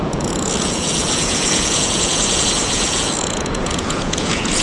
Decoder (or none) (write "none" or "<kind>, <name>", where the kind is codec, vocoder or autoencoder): vocoder, Vocos